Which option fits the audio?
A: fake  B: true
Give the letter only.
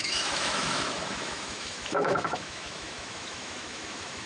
A